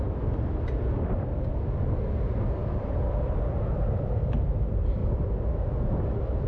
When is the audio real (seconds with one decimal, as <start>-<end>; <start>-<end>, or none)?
5.0-5.9